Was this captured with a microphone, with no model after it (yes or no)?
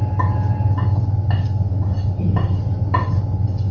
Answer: yes